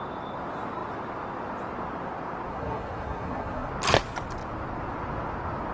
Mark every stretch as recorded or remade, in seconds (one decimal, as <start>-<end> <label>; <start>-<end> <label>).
0.0-2.5 recorded; 2.5-3.7 remade; 3.7-5.7 recorded